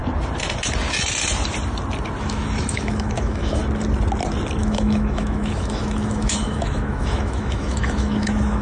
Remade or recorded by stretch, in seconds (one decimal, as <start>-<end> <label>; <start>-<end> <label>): 0.0-2.2 recorded; 2.2-3.6 remade; 3.6-4.6 recorded; 4.6-8.6 remade

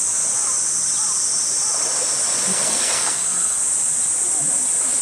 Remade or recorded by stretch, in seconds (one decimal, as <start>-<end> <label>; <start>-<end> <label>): 0.0-2.5 recorded; 2.5-3.6 remade; 3.6-5.0 recorded

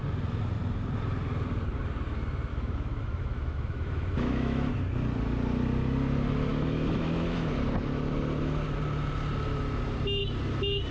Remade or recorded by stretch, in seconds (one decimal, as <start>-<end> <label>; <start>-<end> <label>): 0.0-2.5 recorded; 2.5-4.7 remade; 4.7-6.5 recorded; 6.5-7.5 remade; 7.5-10.9 recorded